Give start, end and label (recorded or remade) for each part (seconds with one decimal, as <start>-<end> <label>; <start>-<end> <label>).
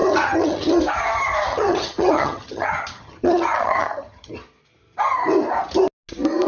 0.0-0.8 remade; 0.8-1.5 recorded; 1.5-4.3 remade; 4.3-6.5 recorded